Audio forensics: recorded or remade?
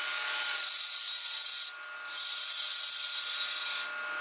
recorded